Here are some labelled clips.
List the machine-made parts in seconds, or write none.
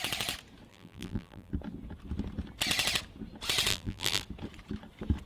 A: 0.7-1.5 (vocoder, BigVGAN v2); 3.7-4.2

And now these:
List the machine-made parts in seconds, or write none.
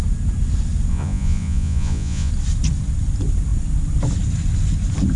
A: 0.9-2.3 (vocoder, Vocos)